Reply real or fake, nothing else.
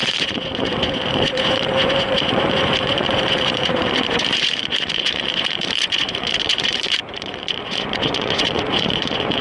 fake